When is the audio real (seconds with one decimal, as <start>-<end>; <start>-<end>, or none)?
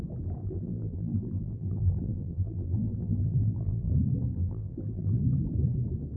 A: 0.0-0.4; 3.9-4.3; 5.2-6.2